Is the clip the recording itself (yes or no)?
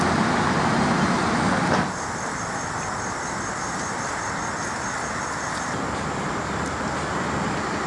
yes